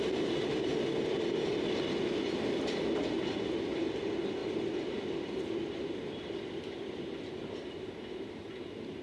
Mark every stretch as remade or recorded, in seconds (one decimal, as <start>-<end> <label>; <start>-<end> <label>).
0.0-9.0 recorded